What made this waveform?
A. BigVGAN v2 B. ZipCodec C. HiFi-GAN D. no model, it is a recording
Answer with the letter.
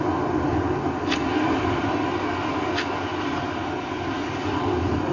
D